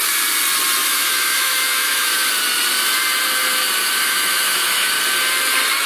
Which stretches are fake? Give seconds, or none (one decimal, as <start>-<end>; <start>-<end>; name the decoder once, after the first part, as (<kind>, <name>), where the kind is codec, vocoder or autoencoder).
0.8-2.3 (autoencoder, DAC-VAE); 3.8-4.9